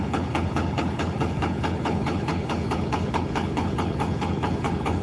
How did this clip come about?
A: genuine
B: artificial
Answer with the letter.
B